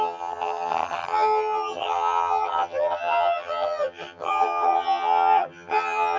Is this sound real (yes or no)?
no